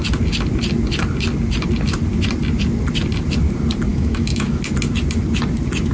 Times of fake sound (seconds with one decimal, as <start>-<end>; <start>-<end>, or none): 3.9-4.6

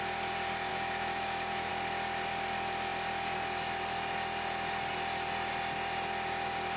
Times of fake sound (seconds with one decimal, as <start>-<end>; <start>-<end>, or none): 0.7-1.7